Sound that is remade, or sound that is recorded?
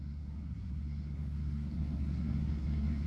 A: remade